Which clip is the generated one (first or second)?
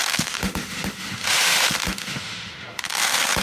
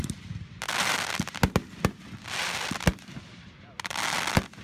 first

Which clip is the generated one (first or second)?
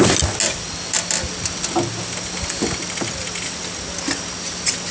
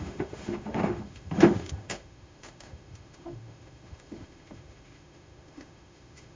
second